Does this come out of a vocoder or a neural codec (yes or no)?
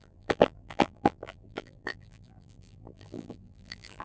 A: yes